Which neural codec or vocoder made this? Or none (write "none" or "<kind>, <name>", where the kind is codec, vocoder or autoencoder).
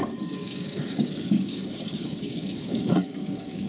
codec, DAC